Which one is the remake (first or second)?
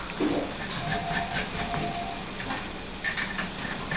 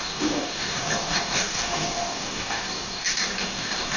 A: second